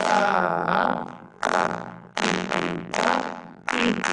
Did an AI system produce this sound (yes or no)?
yes